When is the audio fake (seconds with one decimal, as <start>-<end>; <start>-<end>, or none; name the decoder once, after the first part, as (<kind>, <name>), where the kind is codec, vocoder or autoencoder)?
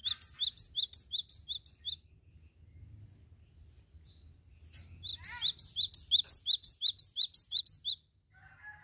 none